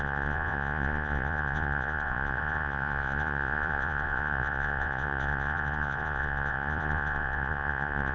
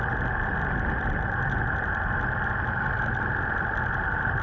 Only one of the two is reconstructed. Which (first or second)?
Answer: first